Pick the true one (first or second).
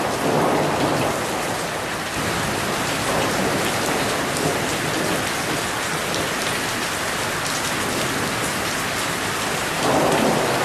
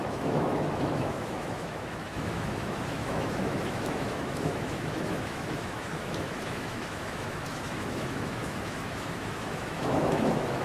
first